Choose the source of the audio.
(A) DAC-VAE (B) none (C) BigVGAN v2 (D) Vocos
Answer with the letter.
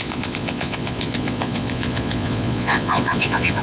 D